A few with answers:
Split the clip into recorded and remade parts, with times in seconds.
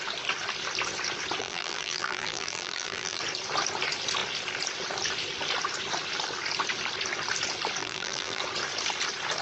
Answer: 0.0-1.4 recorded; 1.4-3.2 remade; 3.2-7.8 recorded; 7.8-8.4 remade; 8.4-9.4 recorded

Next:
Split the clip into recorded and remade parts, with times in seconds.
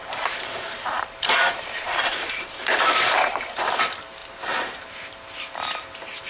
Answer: 0.0-3.8 remade; 3.8-4.2 recorded; 4.2-4.8 remade; 4.8-6.3 recorded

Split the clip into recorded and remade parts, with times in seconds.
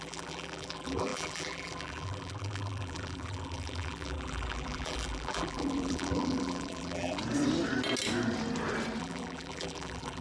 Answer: 0.0-7.2 remade; 7.2-9.0 recorded; 9.0-10.2 remade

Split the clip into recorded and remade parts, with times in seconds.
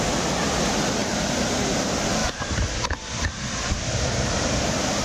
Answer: 0.0-1.0 recorded; 1.0-1.8 remade; 1.8-2.2 recorded; 2.2-5.0 remade